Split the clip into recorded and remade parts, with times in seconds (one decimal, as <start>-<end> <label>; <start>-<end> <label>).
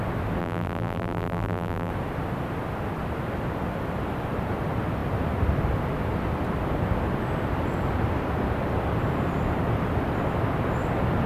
0.0-0.4 recorded; 0.4-1.9 remade; 1.9-11.3 recorded